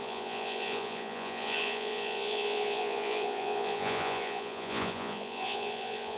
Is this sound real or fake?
fake